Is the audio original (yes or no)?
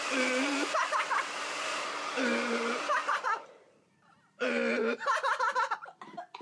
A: yes